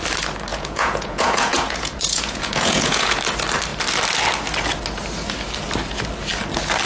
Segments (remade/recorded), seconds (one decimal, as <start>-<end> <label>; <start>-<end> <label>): 0.0-0.5 recorded; 0.5-3.2 remade; 3.2-6.9 recorded